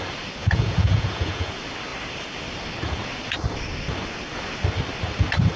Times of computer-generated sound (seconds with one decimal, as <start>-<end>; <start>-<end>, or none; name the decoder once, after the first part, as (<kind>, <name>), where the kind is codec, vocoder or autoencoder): 0.4-1.5 (vocoder, Vocos)